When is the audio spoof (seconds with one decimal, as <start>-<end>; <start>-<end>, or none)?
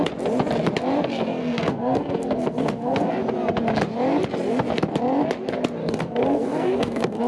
1.1-3.1; 5.8-7.3